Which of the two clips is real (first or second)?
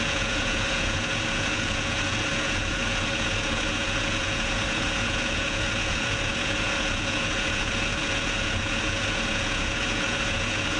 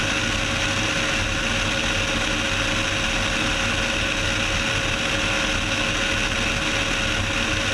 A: second